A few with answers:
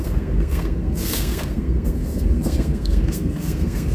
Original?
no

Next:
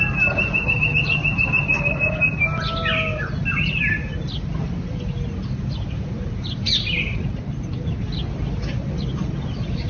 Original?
yes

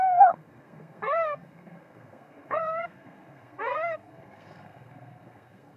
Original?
no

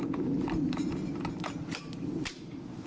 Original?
yes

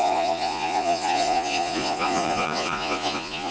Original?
no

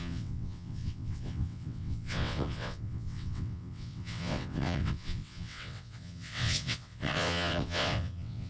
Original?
no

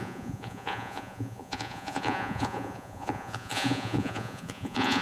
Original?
no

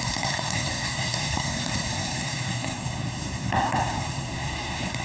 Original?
no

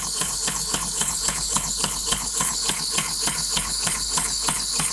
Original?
no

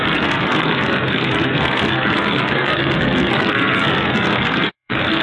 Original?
no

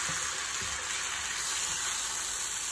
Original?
yes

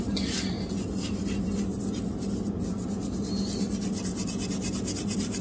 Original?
yes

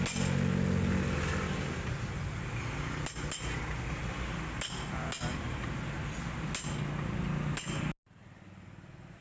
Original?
yes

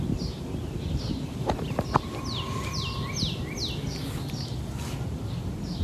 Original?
yes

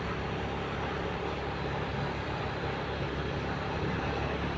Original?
yes